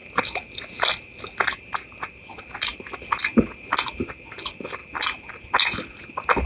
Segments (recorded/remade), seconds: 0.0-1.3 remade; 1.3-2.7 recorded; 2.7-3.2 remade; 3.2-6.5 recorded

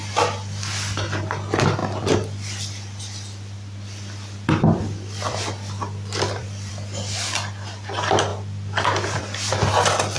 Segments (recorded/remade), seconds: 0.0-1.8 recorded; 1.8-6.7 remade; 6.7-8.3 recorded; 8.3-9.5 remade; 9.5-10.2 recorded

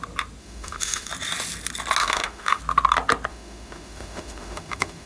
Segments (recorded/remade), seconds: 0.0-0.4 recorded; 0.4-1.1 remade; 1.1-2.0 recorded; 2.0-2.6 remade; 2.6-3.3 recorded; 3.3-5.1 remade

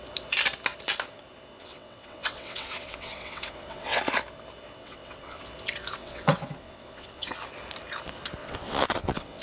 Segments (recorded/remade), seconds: 0.0-1.6 recorded; 1.6-4.0 remade; 4.0-4.8 recorded; 4.8-5.4 remade; 5.4-6.0 recorded; 6.0-7.3 remade; 7.3-8.4 recorded; 8.4-9.4 remade

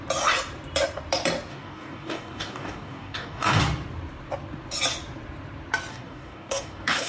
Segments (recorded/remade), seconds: 0.0-1.5 recorded; 1.5-3.6 remade; 3.6-5.9 recorded; 5.9-7.1 remade

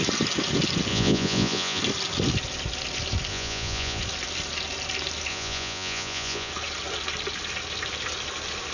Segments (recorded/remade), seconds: 0.0-0.9 recorded; 0.9-1.8 remade; 1.8-3.3 recorded; 3.3-4.0 remade; 4.0-5.3 recorded; 5.3-6.5 remade; 6.5-8.7 recorded

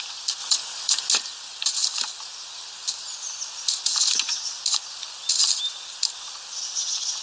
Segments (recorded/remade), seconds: 0.0-0.4 recorded; 0.4-1.1 remade; 1.1-7.2 recorded